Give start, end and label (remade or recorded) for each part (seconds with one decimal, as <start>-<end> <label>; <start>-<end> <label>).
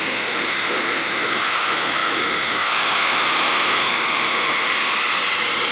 0.0-4.9 remade; 4.9-5.7 recorded